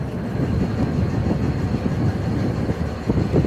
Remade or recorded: recorded